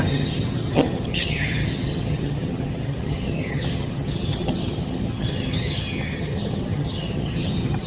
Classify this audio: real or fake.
fake